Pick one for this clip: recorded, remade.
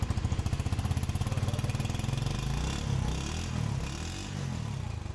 recorded